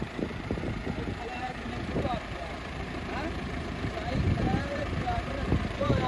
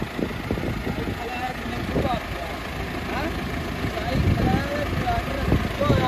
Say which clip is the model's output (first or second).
first